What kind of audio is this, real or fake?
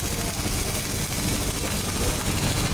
real